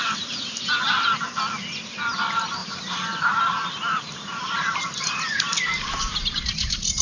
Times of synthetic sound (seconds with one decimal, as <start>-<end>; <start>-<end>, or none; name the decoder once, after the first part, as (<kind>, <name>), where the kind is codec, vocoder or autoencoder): 2.6-7.0 (vocoder, BigVGAN v2)